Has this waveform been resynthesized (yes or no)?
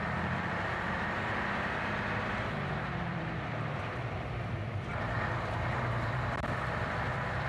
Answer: yes